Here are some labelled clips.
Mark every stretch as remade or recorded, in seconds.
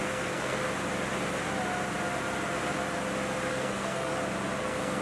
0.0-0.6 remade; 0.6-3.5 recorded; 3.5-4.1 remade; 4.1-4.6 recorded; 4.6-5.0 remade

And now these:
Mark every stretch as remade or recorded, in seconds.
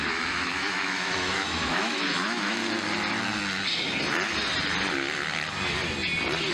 0.0-2.6 remade; 2.6-6.5 recorded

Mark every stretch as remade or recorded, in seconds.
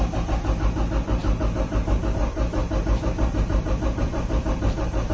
0.0-1.2 recorded; 1.2-2.0 remade; 2.0-2.6 recorded; 2.6-5.1 remade